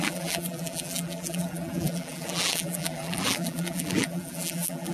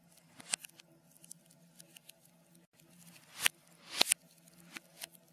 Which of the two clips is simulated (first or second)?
first